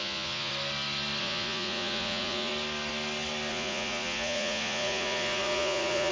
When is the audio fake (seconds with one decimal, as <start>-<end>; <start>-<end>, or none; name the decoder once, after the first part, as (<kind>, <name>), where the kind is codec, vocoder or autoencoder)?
0.0-0.5 (vocoder, Vocos); 1.2-2.5; 3.5-6.1